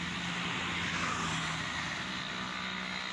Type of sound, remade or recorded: recorded